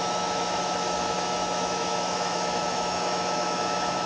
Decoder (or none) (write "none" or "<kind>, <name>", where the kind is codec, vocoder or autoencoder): autoencoder, DAC-VAE